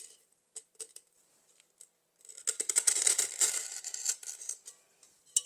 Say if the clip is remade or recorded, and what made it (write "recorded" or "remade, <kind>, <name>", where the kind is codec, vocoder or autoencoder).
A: recorded